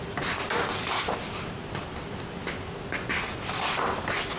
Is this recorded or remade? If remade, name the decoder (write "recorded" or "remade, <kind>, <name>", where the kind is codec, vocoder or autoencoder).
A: recorded